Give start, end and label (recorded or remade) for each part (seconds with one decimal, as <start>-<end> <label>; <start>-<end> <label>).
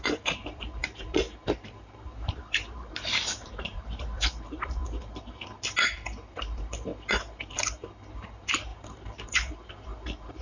0.0-4.8 remade; 4.8-6.3 recorded; 6.3-6.9 remade; 6.9-8.1 recorded; 8.1-10.4 remade